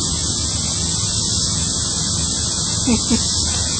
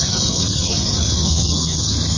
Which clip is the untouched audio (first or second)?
first